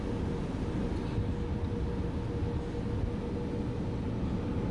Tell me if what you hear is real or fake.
real